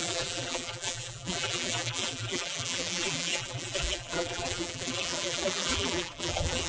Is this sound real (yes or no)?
no